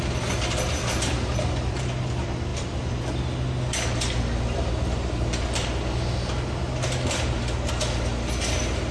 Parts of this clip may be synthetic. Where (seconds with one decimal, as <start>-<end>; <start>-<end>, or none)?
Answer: none